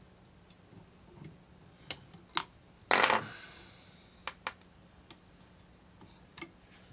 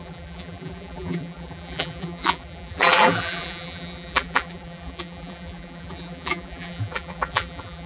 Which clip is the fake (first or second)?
second